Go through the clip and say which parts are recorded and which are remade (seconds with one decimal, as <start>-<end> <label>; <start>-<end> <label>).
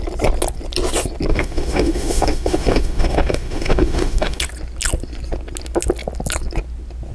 0.0-1.3 recorded; 1.3-4.4 remade; 4.4-7.1 recorded